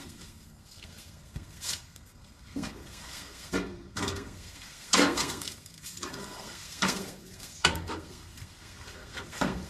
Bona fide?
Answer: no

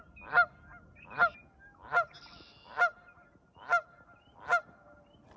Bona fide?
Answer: yes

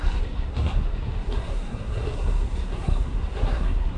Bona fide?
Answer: no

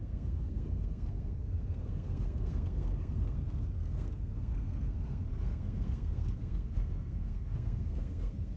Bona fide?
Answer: no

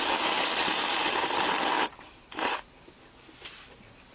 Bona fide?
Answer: yes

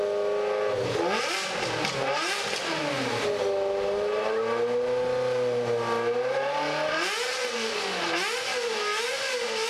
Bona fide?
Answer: yes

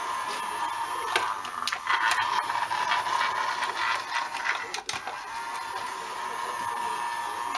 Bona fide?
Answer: yes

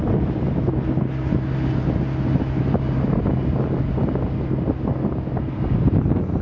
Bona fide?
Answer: yes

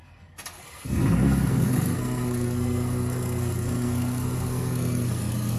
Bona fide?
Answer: no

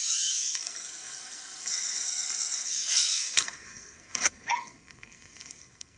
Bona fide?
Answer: no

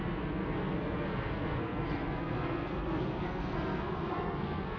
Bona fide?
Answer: no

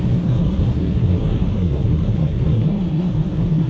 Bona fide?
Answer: no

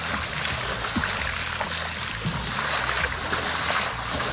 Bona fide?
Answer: yes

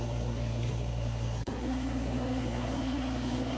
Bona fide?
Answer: no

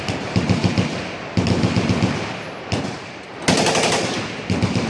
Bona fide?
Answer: yes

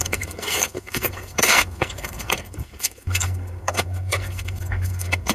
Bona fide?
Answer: no